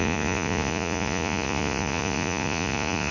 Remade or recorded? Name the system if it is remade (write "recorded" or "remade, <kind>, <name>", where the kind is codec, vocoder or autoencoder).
remade, vocoder, Vocos